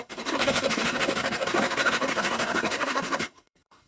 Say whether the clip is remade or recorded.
remade